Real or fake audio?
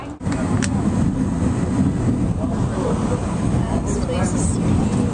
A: real